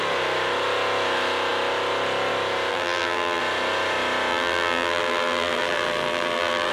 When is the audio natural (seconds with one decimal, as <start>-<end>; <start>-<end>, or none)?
0.0-2.7; 3.4-4.3